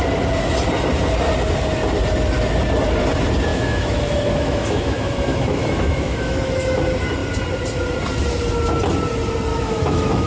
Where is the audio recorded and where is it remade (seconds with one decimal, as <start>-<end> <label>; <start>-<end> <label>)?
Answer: 0.0-3.5 recorded; 3.5-6.8 remade; 6.8-9.5 recorded; 9.5-10.3 remade